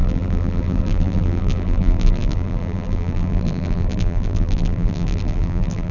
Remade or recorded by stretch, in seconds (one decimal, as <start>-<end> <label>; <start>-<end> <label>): 0.0-5.9 remade